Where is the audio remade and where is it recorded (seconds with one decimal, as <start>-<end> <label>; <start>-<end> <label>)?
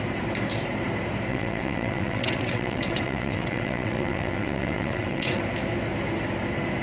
0.0-1.3 recorded; 1.3-5.4 remade; 5.4-6.8 recorded